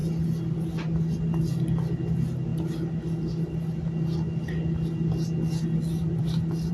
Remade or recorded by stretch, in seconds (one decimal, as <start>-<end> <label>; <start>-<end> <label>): 0.0-6.7 recorded